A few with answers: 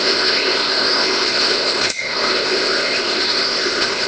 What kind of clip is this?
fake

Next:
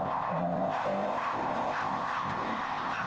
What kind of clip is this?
fake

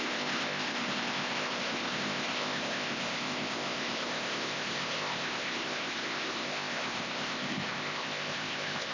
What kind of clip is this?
fake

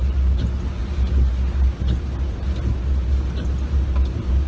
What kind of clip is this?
real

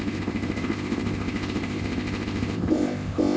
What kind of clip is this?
fake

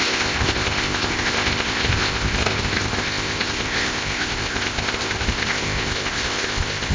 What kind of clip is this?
fake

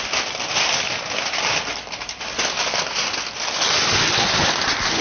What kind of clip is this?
real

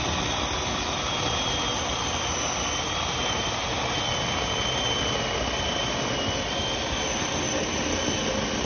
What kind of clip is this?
real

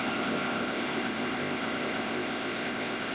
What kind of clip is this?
fake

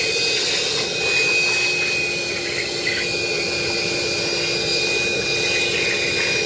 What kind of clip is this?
real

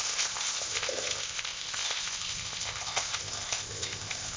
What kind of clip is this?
fake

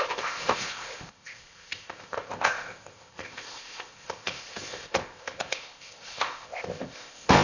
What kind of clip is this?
fake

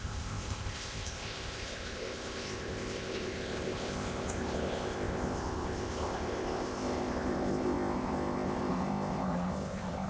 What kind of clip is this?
fake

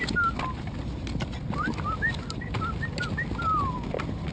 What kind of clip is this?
real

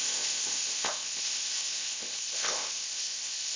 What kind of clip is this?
fake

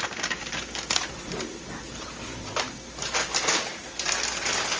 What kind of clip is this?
real